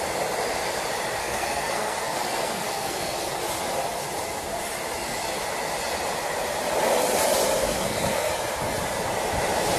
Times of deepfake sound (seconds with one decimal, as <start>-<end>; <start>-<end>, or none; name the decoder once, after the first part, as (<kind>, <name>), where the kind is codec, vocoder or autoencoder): 1.2-3.4 (codec, SNAC); 7.6-8.3